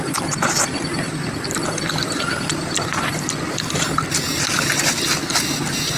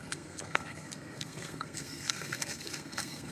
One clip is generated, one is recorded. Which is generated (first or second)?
second